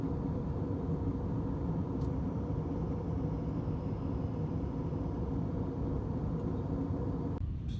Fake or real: real